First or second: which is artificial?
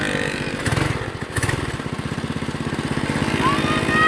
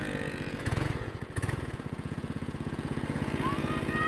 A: second